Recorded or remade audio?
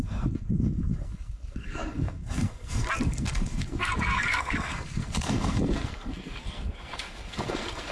remade